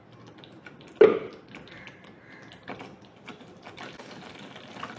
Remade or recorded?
recorded